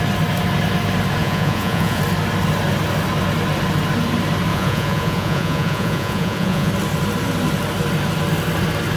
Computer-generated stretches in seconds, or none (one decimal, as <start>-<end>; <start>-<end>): 1.2-2.0; 4.5-6.7